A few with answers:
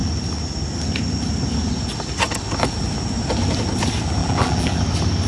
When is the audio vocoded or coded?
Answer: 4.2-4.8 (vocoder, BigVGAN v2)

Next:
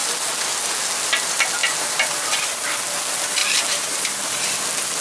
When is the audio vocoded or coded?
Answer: 1.6-2.4 (vocoder, BigVGAN v2); 3.4-4.4

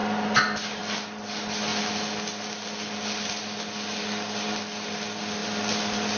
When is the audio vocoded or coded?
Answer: 0.8-1.7 (vocoder, BigVGAN v2); 4.1-5.4